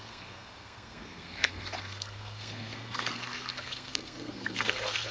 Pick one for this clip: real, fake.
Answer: fake